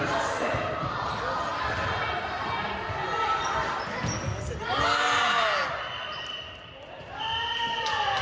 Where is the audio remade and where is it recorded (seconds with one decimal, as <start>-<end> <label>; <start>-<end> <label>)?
0.0-1.5 remade; 1.5-6.2 recorded; 6.2-8.2 remade